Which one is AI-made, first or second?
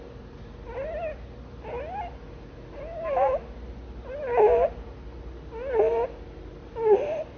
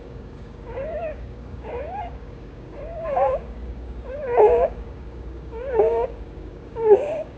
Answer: second